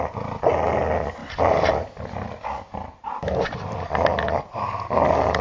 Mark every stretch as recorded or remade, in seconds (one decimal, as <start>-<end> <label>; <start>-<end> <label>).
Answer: 0.0-1.2 recorded; 1.2-4.4 remade; 4.4-5.4 recorded

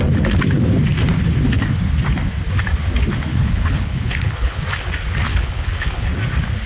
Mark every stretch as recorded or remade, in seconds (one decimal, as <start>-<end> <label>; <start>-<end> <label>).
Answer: 0.0-3.3 recorded; 3.3-4.6 remade; 4.6-5.3 recorded; 5.3-6.1 remade; 6.1-6.7 recorded

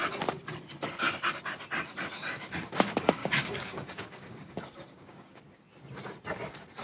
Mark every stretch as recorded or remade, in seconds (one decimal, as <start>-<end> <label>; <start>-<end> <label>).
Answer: 0.0-3.2 recorded; 3.2-5.4 remade; 5.4-6.8 recorded

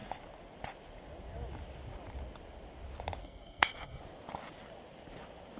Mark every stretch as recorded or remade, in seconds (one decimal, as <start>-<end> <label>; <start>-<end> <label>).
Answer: 0.0-3.2 recorded; 3.2-4.0 remade; 4.0-5.6 recorded

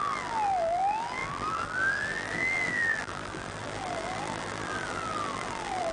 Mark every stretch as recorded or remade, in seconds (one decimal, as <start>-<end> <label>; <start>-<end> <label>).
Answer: 0.0-5.9 remade

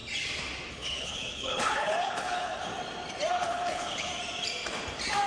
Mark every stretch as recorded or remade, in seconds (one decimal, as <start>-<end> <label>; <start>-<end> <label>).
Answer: 0.0-0.7 recorded; 0.7-2.7 remade; 2.7-3.3 recorded; 3.3-4.1 remade; 4.1-5.3 recorded

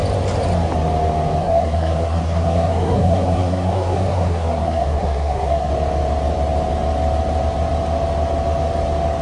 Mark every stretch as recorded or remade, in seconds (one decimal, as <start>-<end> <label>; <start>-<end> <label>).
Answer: 0.0-1.4 recorded; 1.4-5.7 remade; 5.7-9.2 recorded

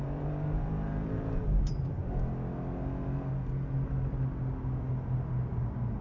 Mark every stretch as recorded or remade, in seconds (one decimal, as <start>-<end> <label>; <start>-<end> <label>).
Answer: 0.0-2.0 remade; 2.0-5.6 recorded; 5.6-6.0 remade